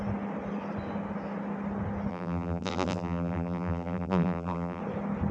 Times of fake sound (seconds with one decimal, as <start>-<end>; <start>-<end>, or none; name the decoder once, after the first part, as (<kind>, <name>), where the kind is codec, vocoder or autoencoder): 2.1-4.8 (vocoder, BigVGAN v2)